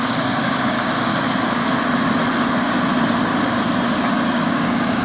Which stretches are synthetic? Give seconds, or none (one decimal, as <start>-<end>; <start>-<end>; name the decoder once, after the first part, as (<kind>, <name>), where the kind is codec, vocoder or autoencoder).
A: 0.0-1.1 (codec, DAC); 4.1-5.0

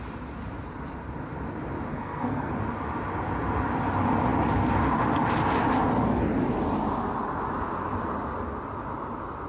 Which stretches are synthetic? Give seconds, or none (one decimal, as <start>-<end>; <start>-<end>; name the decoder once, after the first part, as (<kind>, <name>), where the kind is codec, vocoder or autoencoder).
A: 1.9-2.5 (codec, SNAC)